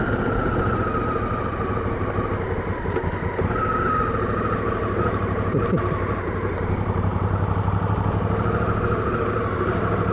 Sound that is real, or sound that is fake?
real